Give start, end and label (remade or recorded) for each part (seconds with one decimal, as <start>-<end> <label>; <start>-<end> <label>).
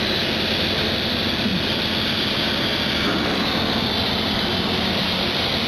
0.0-5.7 recorded